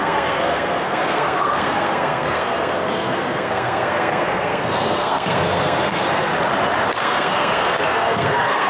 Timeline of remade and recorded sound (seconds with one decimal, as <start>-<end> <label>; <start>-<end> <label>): 0.0-6.3 remade; 6.3-6.9 recorded; 6.9-8.7 remade